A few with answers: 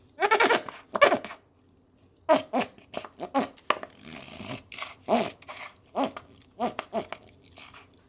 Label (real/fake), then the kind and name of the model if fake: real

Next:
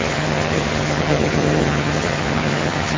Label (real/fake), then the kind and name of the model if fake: fake, vocoder, HiFi-GAN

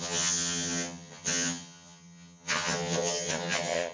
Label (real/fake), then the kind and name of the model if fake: fake, vocoder, HiFi-GAN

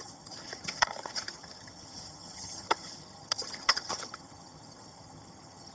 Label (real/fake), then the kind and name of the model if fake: fake, vocoder, HiFi-GAN